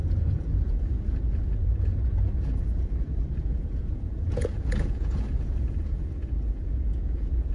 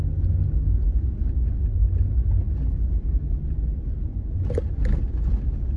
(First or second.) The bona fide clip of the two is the second